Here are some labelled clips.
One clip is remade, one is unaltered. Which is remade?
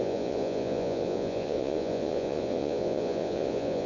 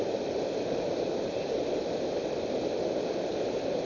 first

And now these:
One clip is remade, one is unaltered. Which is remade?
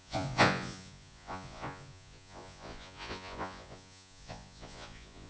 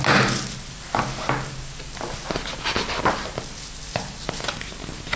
first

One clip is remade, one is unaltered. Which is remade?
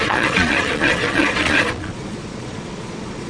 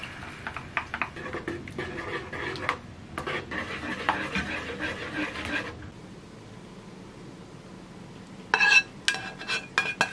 first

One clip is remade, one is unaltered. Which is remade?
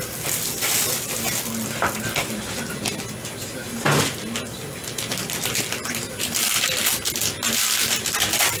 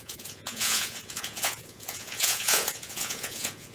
second